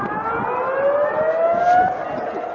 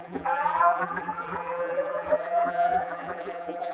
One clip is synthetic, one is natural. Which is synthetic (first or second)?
second